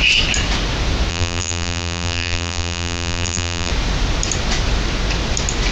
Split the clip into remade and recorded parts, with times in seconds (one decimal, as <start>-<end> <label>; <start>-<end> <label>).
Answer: 0.0-1.1 recorded; 1.1-3.7 remade; 3.7-5.7 recorded